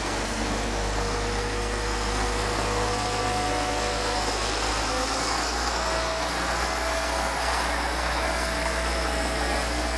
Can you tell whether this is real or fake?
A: fake